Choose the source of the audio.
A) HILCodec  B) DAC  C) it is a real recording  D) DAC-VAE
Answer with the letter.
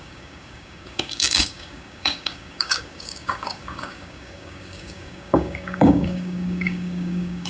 B